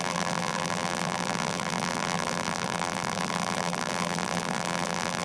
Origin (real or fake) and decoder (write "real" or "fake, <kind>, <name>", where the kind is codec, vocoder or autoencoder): fake, vocoder, BigVGAN v2